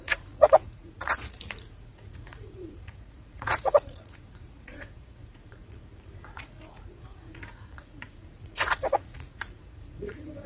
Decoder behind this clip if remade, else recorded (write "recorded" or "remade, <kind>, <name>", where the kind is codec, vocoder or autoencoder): remade, vocoder, Vocos